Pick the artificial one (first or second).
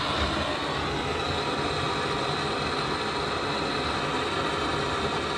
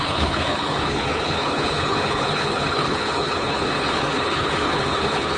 second